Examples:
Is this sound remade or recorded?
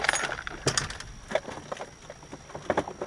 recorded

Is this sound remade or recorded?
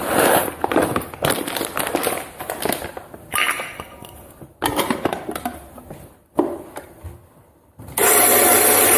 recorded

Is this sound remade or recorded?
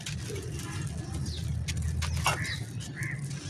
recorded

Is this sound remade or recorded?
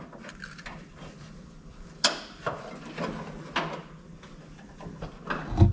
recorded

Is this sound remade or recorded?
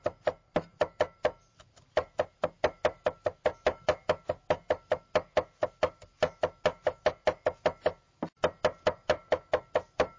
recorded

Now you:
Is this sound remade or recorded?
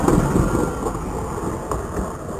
recorded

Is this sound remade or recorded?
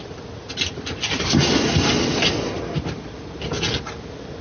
recorded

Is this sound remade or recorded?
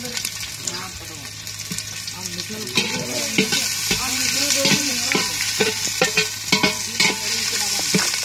recorded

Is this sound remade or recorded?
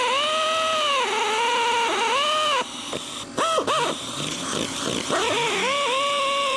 remade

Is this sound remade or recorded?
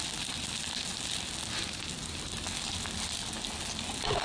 recorded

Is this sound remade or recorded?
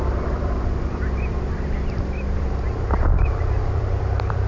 remade